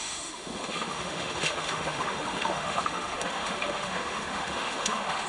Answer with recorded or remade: remade